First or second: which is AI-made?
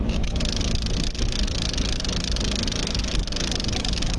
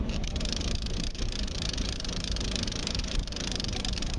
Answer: second